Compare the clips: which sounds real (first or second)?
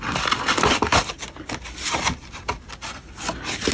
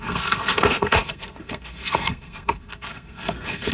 first